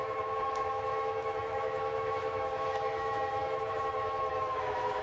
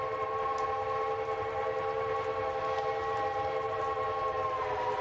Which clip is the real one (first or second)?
second